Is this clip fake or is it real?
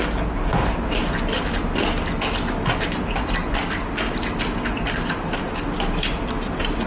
real